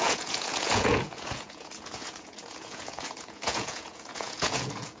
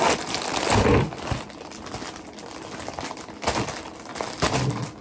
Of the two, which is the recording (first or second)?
second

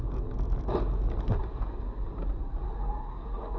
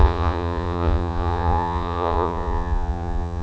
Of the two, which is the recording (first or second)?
first